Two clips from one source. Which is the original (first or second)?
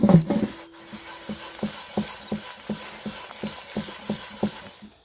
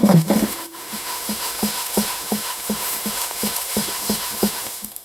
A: first